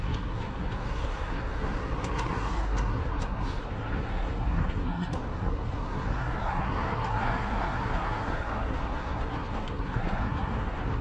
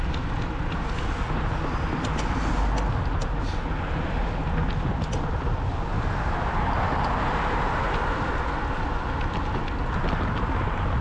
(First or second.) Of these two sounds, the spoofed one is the first